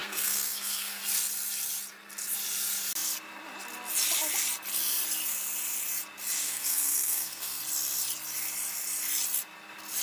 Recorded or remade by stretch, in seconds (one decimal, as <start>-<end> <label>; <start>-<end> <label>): 0.0-1.0 remade; 1.0-6.4 recorded; 6.4-7.6 remade; 7.6-10.0 recorded